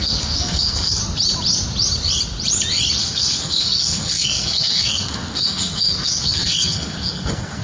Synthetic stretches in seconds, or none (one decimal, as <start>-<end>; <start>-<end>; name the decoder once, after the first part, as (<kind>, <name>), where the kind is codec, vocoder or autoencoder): 0.0-1.0 (codec, SNAC); 3.0-7.6